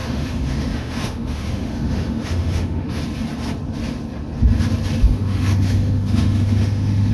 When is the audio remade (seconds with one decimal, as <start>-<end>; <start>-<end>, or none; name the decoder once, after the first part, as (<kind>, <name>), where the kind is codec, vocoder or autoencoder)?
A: 0.0-3.0 (autoencoder, DAC-VAE); 5.0-7.1